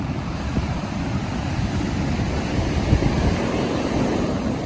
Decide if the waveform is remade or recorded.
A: recorded